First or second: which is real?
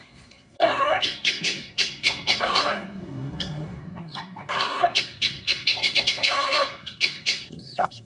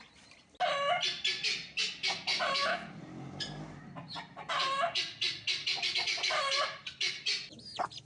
second